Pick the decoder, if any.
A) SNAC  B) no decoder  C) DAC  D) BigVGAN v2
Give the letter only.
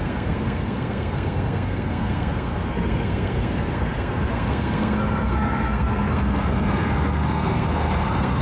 A